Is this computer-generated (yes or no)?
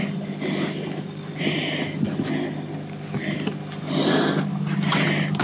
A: no